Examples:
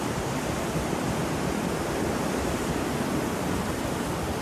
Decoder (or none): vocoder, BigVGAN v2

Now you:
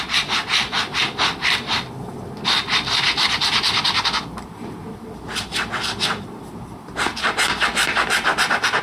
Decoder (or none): none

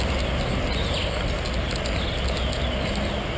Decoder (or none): none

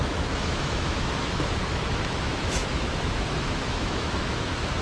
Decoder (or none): autoencoder, DAC-VAE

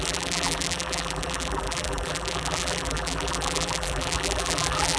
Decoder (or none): vocoder, BigVGAN v2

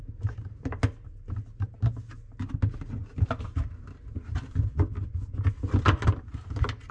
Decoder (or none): none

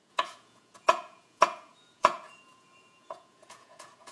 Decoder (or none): vocoder, Vocos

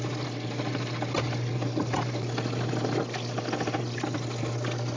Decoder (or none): none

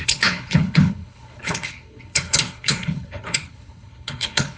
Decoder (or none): codec, HILCodec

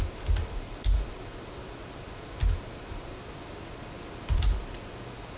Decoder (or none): none